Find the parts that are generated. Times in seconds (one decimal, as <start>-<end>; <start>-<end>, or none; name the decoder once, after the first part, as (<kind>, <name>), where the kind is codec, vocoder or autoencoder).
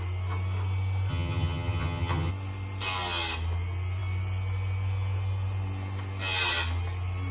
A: 1.1-2.3 (vocoder, HiFi-GAN)